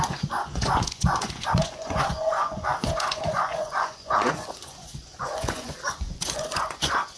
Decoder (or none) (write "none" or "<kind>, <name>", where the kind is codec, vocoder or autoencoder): vocoder, Vocos